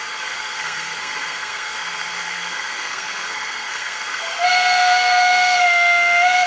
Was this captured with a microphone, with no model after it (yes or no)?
no